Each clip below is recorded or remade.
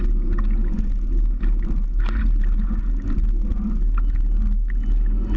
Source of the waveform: recorded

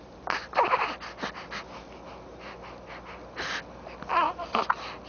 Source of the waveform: recorded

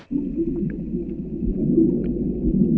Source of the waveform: recorded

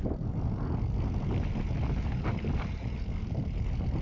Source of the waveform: recorded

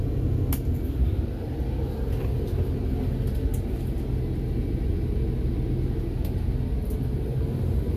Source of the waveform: recorded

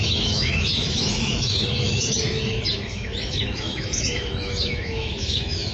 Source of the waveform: remade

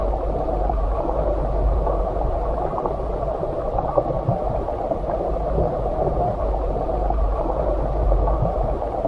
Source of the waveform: remade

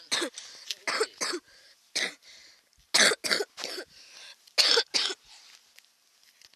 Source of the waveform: recorded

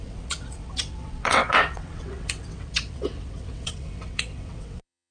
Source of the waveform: remade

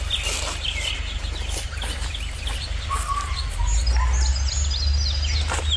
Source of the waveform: recorded